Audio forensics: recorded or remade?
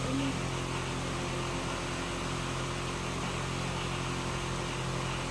recorded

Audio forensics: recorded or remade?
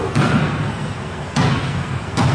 remade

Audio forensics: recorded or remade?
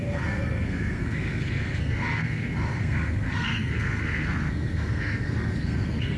remade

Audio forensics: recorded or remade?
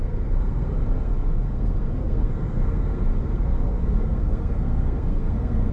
remade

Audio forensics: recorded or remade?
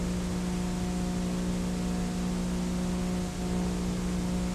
recorded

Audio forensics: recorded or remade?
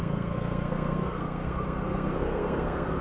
remade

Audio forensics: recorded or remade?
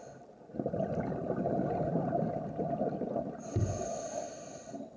recorded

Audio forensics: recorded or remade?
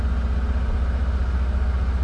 recorded